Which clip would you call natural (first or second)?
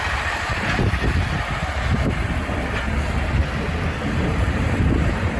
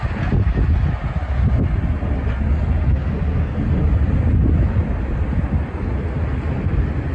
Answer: second